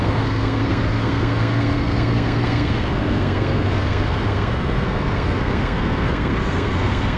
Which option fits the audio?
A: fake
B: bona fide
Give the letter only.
A